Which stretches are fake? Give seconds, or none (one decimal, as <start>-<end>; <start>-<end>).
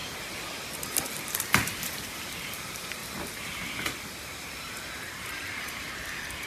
1.3-3.0; 4.0-6.5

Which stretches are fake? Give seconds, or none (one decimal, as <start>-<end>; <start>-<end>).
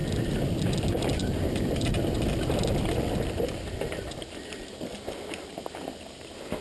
none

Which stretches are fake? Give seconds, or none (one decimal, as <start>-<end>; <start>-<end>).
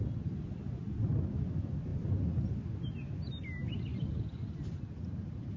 3.9-5.6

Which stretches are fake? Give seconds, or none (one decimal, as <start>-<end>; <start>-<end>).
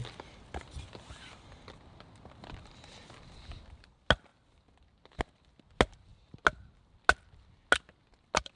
none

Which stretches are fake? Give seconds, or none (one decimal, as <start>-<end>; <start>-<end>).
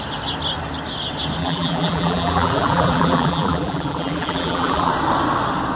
1.4-4.9